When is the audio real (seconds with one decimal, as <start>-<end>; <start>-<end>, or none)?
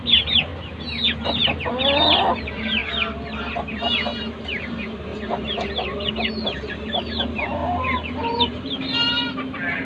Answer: 0.5-2.3; 2.8-3.7; 7.6-8.4